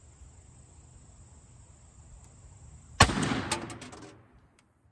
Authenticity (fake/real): real